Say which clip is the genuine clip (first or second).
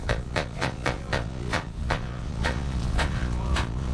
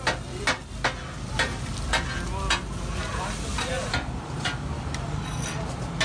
second